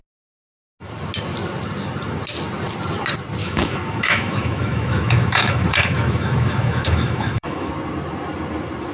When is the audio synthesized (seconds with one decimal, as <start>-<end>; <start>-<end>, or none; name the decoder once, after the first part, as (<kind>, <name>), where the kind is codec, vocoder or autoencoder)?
3.4-7.7 (autoencoder, DAC-VAE)